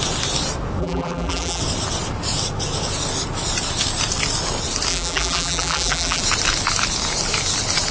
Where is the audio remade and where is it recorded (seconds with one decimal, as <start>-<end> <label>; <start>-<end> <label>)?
0.0-0.8 recorded; 0.8-1.6 remade; 1.6-4.9 recorded; 4.9-6.2 remade; 6.2-7.9 recorded